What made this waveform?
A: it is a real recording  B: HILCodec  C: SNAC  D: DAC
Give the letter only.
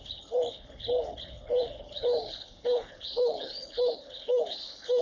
B